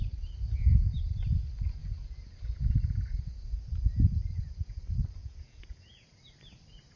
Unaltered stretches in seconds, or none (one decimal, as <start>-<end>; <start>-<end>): 0.0-1.8; 4.8-5.2; 6.1-7.0